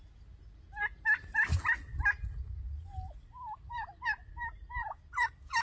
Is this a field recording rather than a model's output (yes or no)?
yes